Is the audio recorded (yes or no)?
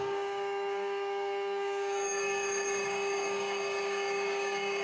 no